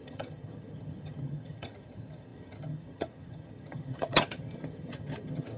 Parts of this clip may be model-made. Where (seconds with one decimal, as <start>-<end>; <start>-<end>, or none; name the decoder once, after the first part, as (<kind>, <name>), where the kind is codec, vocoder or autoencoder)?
0.0-5.6 (vocoder, HiFi-GAN)